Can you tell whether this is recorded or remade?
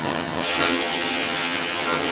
remade